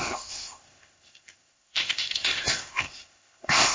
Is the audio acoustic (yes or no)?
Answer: no